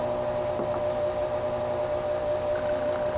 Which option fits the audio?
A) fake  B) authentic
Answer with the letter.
B